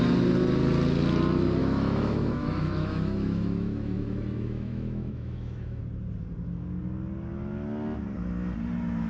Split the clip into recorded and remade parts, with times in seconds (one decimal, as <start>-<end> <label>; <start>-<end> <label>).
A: 0.0-1.6 recorded; 1.6-5.8 remade; 5.8-9.1 recorded